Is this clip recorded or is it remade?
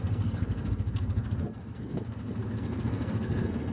remade